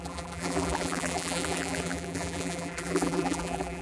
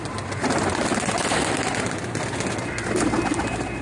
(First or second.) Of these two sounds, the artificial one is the first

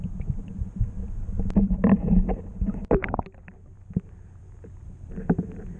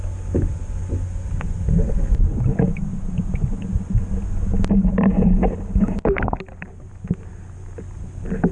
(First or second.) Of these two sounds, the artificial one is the first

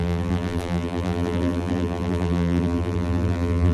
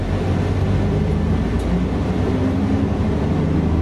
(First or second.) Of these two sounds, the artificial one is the first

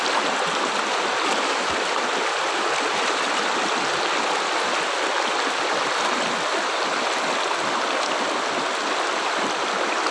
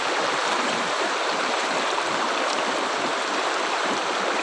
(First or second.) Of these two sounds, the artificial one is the second